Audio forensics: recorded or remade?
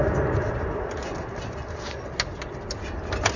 recorded